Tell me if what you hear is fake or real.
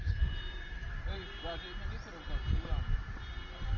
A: real